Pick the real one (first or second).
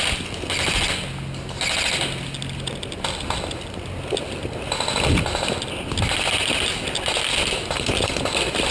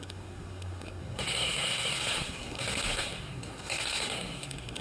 first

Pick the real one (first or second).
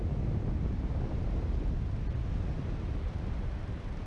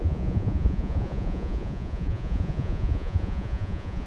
first